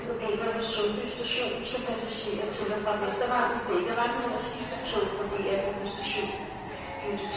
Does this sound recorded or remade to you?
recorded